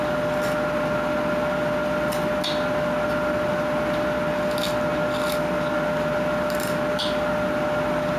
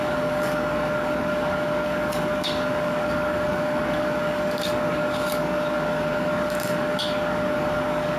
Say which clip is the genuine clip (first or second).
first